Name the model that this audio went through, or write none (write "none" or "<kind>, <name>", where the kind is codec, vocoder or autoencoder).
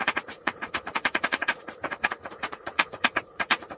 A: vocoder, Vocos